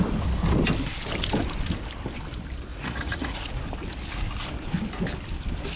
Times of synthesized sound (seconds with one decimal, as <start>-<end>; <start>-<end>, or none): 2.7-3.4